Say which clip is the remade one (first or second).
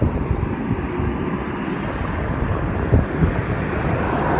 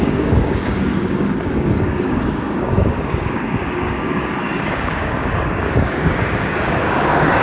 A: second